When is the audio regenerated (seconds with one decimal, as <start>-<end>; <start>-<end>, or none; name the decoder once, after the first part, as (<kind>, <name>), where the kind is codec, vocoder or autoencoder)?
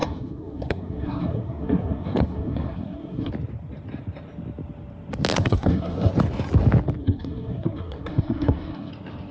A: 0.0-3.3 (codec, SNAC); 5.3-6.1; 7.0-8.9